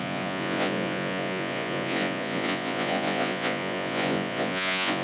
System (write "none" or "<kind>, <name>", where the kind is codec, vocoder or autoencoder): vocoder, Vocos